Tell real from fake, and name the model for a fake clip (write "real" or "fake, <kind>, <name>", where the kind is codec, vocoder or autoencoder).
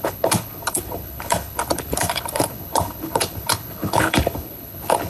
fake, codec, HILCodec